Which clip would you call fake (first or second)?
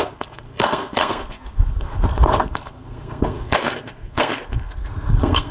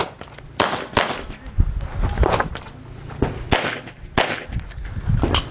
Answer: first